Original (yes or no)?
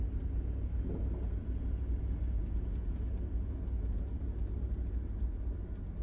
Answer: yes